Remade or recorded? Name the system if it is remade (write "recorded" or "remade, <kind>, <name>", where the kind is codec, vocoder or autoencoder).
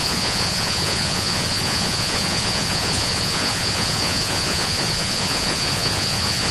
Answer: remade, vocoder, Vocos